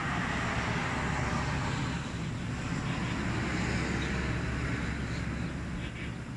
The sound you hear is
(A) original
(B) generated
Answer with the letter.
A